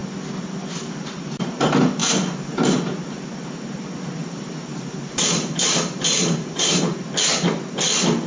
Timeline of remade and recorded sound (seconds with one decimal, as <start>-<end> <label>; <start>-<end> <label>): 0.0-2.0 recorded; 2.0-2.6 remade; 2.6-4.2 recorded; 4.2-6.8 remade; 6.8-8.3 recorded